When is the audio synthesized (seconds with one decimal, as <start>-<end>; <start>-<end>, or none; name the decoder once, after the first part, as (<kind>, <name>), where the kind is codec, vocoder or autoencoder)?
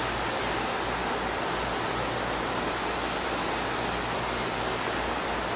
none